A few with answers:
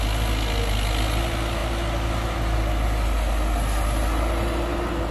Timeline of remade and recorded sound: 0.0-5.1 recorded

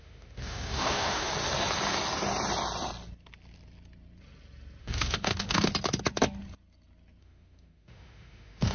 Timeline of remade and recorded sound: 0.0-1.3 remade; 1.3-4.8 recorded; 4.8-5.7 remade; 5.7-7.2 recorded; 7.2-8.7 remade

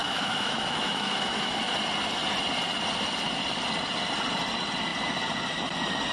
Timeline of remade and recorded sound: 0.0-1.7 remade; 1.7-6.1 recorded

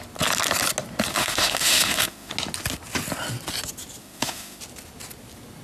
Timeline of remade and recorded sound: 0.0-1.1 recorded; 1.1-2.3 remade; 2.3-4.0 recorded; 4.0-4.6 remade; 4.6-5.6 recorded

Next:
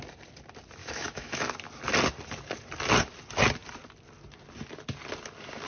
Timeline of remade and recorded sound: 0.0-0.8 recorded; 0.8-1.4 remade; 1.4-5.7 recorded

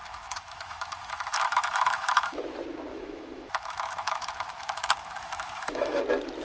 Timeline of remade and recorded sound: 0.0-2.4 remade; 2.4-2.9 recorded; 2.9-6.0 remade; 6.0-6.4 recorded